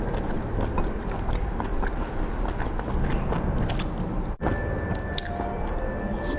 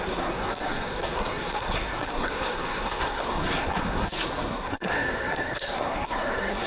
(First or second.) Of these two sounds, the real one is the first